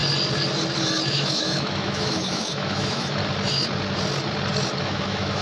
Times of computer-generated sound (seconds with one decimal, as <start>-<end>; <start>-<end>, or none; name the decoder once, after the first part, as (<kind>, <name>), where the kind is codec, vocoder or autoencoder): 1.1-3.2 (autoencoder, DAC-VAE); 4.8-5.4